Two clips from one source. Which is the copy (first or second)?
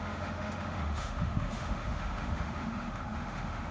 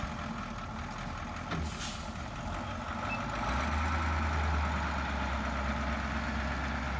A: first